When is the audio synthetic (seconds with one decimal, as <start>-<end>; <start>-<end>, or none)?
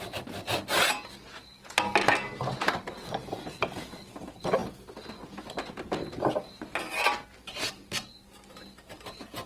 none